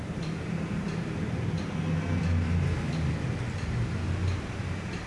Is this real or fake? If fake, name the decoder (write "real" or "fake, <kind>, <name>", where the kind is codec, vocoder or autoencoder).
real